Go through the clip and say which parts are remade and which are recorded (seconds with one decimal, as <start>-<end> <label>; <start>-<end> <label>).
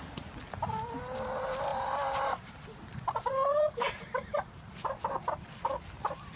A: 0.0-1.7 recorded; 1.7-2.6 remade; 2.6-3.5 recorded; 3.5-4.9 remade; 4.9-6.4 recorded